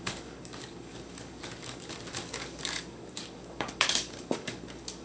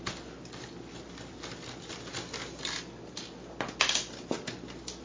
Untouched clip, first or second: second